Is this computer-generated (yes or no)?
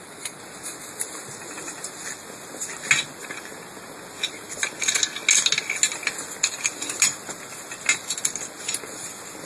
no